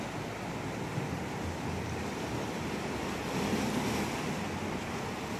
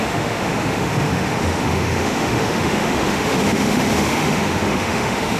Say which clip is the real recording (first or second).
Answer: first